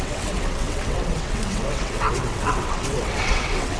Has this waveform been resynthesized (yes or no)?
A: yes